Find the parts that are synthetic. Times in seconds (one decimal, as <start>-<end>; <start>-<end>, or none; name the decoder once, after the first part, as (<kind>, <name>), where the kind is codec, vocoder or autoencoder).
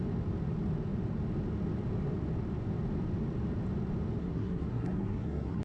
4.2-5.6 (codec, SNAC)